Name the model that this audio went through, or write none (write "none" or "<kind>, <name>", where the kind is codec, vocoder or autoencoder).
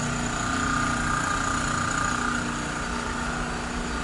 none